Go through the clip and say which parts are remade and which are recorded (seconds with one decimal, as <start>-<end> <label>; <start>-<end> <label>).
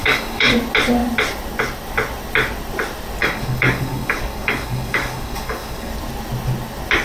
0.0-0.5 remade; 0.5-3.2 recorded; 3.2-5.9 remade; 5.9-7.0 recorded